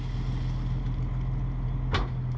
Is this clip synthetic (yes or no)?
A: no